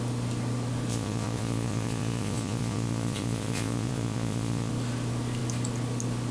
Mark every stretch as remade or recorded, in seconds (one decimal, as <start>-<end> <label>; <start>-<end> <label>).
0.0-0.9 recorded; 0.9-4.7 remade; 4.7-6.3 recorded